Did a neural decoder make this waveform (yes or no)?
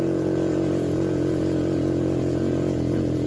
yes